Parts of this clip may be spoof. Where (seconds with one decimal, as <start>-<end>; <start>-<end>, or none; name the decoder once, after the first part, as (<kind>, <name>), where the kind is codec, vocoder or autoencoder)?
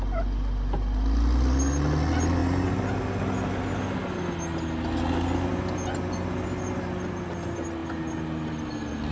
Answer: none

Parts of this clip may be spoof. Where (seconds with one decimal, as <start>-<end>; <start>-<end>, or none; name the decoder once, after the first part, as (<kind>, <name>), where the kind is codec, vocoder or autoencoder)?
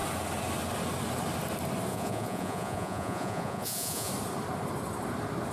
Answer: 1.9-4.1 (vocoder, Vocos)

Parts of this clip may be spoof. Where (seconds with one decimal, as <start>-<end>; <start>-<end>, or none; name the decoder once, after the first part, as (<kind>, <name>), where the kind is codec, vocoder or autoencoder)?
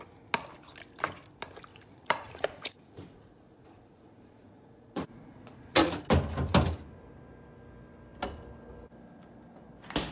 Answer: 1.7-6.0 (vocoder, Vocos)